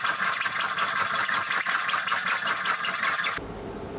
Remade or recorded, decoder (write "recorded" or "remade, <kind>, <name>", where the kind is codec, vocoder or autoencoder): recorded